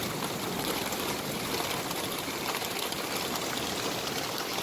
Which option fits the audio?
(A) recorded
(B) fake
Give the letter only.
A